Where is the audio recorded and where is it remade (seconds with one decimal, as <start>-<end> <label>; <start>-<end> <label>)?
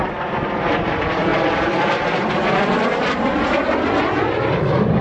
0.0-5.0 recorded